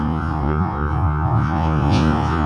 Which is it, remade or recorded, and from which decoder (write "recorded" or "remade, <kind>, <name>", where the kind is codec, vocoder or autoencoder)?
remade, vocoder, Vocos